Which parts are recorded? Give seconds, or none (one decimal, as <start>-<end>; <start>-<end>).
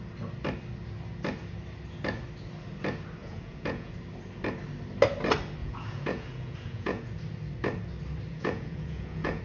0.0-3.2; 3.9-5.6; 7.1-8.3